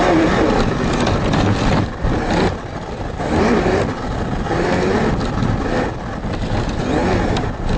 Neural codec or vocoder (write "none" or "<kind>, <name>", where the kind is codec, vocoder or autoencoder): none